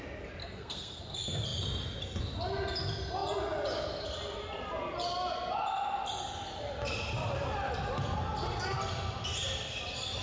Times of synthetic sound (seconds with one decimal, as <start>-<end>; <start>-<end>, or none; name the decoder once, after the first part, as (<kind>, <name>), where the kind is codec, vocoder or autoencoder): 0.4-1.0 (codec, SNAC)